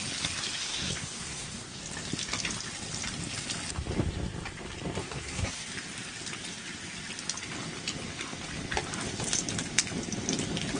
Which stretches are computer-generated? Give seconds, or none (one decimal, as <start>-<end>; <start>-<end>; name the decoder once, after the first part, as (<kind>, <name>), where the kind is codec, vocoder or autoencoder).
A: 0.6-1.8 (codec, SNAC); 5.0-5.7